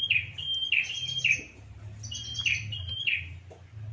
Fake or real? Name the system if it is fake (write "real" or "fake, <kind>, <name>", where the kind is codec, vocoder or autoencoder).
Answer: real